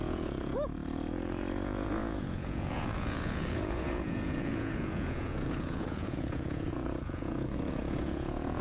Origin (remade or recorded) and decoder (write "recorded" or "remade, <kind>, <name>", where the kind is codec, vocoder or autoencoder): remade, vocoder, Vocos